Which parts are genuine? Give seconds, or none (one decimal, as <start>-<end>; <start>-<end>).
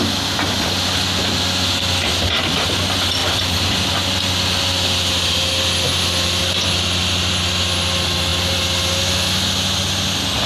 0.0-10.5